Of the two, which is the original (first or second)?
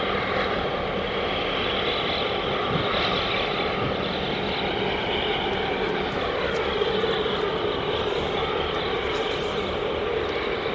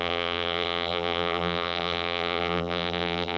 first